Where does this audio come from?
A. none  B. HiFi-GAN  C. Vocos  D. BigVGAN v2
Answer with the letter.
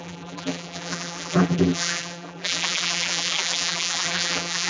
D